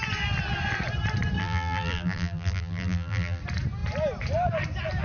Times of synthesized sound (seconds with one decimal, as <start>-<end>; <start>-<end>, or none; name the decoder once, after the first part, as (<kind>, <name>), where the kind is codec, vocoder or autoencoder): 1.4-3.4 (vocoder, BigVGAN v2)